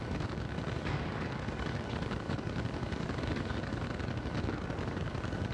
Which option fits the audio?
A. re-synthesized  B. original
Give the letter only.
A